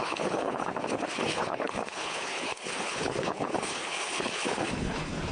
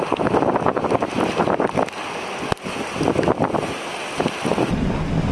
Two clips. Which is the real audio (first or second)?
second